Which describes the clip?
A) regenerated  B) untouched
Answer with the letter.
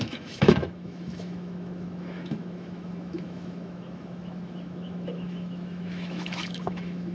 A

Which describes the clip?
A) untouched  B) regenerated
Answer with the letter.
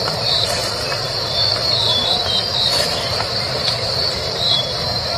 B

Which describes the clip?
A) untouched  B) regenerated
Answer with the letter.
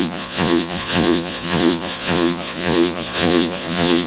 B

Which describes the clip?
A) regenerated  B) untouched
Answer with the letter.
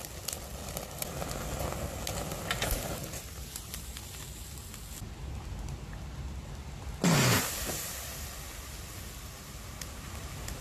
B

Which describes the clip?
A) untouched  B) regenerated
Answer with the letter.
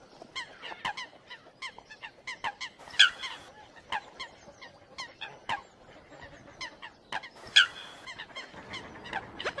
A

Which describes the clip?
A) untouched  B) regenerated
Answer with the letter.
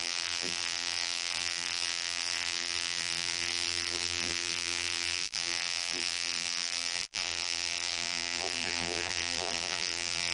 B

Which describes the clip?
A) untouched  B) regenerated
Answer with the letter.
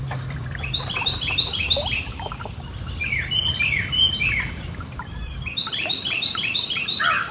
B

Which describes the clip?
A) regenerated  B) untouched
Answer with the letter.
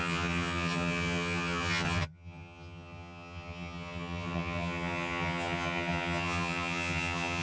A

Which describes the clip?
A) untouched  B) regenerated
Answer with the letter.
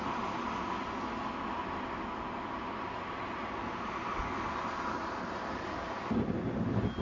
A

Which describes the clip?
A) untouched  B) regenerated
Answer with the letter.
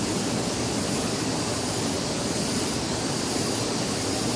A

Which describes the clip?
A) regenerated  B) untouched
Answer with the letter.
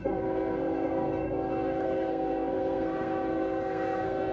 A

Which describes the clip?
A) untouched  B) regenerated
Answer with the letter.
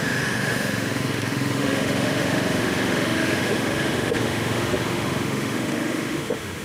B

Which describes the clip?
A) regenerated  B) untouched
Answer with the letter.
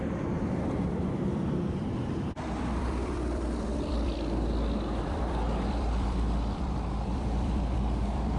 A